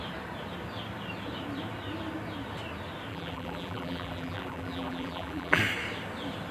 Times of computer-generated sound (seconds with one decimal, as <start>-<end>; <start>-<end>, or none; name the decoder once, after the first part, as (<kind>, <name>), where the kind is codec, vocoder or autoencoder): 3.1-5.6 (vocoder, BigVGAN v2)